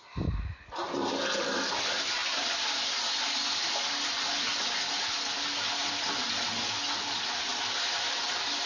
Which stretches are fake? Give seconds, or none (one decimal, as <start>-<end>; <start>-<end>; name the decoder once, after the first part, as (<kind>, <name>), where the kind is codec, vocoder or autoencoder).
none